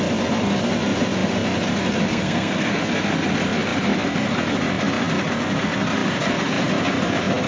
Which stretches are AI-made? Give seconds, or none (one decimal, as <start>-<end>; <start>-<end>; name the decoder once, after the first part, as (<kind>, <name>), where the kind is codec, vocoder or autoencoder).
2.1-2.8 (codec, SNAC)